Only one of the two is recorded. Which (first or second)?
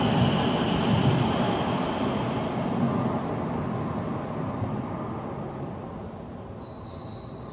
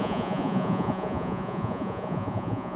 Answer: first